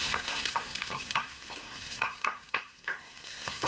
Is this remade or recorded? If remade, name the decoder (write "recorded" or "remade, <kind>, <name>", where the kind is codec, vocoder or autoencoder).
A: remade, codec, SNAC